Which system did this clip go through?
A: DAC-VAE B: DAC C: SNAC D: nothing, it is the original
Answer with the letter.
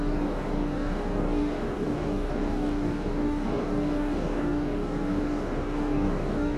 B